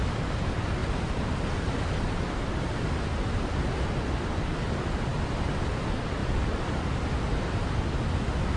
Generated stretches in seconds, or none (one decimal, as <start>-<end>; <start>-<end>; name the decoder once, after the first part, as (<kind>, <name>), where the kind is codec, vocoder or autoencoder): 0.8-2.9 (vocoder, BigVGAN v2); 6.2-7.7